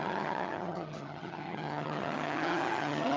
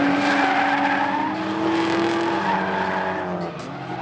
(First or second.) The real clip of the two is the second